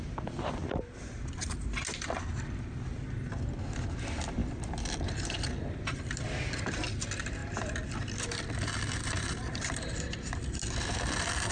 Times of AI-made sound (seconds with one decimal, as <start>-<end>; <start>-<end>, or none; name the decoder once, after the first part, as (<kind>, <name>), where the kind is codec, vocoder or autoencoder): 0.6-1.4 (vocoder, BigVGAN v2); 4.4-5.6; 7.4-11.5